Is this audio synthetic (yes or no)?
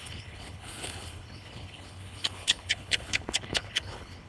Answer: yes